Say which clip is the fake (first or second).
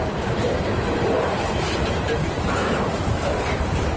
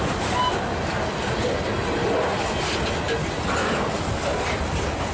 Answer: first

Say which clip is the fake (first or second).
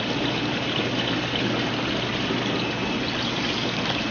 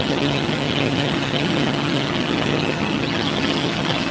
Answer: second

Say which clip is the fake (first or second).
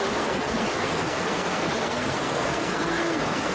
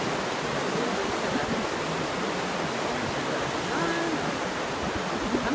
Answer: first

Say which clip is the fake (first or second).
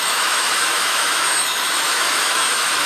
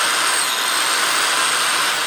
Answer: first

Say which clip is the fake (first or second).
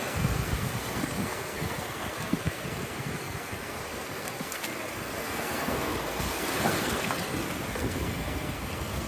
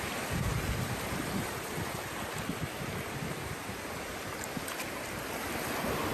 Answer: first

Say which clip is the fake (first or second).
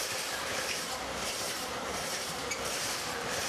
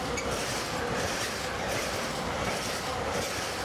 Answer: first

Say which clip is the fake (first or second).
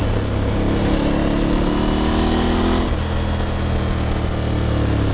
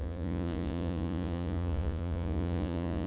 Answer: second